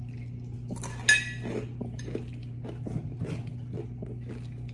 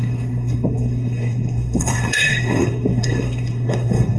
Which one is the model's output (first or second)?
second